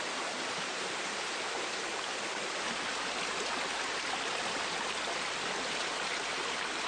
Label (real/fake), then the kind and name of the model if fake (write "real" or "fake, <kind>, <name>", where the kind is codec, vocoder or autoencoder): real